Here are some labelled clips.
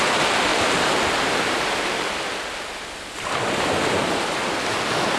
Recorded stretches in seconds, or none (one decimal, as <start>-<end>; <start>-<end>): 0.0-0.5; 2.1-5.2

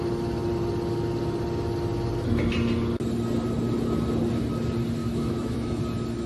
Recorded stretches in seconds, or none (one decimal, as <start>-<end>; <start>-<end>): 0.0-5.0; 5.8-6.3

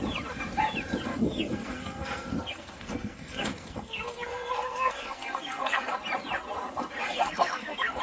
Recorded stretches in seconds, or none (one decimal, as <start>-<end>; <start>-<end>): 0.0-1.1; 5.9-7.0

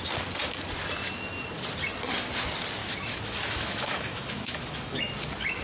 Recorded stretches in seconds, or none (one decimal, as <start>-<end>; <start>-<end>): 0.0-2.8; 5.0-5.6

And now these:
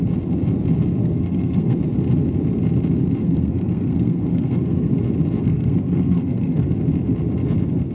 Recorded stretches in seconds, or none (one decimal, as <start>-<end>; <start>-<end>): 0.0-1.0; 1.8-3.2; 4.9-5.4; 6.7-7.9